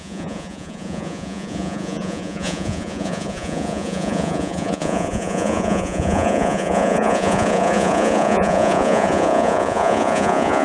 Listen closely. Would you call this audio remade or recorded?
remade